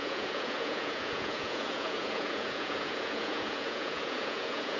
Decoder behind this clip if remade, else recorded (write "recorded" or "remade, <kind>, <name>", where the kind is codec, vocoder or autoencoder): remade, vocoder, Vocos